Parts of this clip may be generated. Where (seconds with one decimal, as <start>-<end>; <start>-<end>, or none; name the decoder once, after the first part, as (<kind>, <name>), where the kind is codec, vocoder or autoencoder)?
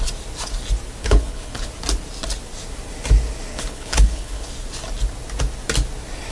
1.0-1.7 (codec, HILCodec); 3.5-4.5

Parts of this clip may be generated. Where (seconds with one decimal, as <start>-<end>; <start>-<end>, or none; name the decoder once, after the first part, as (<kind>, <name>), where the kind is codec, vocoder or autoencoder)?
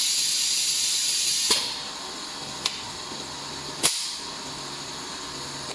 none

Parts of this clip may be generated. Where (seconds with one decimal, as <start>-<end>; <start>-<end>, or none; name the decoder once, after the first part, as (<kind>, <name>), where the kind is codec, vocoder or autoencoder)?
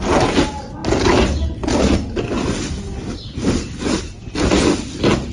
none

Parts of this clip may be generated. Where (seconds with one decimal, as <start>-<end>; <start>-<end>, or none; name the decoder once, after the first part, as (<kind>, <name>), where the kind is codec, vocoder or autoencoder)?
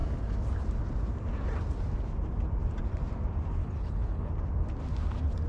3.6-4.3 (codec, HILCodec)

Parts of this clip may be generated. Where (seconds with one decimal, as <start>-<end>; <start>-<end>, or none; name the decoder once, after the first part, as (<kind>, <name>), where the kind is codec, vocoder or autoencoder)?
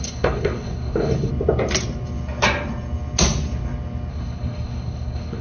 0.0-1.3 (codec, HILCodec); 4.1-5.4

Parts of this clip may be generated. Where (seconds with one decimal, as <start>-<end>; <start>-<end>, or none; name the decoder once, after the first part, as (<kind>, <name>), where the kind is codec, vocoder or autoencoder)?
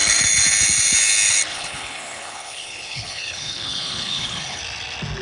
1.5-4.6 (codec, HILCodec)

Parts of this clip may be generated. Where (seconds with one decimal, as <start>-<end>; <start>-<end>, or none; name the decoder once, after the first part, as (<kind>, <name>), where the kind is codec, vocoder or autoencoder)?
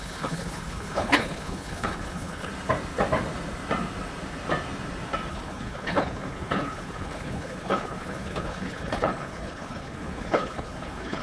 0.0-2.5 (codec, HILCodec); 5.3-11.2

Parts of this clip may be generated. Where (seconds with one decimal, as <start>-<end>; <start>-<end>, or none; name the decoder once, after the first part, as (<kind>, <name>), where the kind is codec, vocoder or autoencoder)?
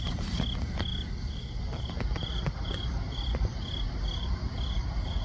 none